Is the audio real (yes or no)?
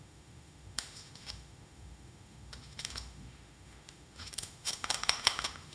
no